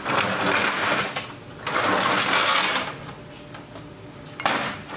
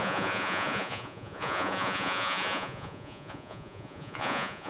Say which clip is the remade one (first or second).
second